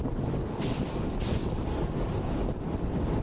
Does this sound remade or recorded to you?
remade